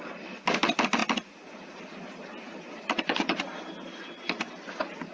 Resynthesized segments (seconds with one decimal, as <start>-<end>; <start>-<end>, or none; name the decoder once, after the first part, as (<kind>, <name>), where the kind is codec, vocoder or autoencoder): none